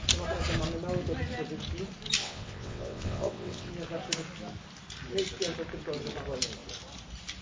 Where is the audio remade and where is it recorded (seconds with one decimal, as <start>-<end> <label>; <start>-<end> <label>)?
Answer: 0.0-2.2 recorded; 2.2-3.7 remade; 3.7-7.4 recorded